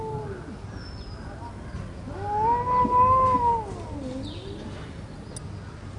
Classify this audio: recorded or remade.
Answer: recorded